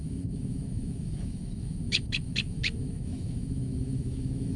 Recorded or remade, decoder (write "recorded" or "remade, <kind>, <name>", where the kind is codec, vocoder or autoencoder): remade, autoencoder, DAC-VAE